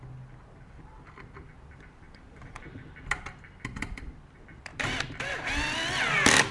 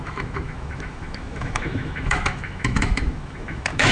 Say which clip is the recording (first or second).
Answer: first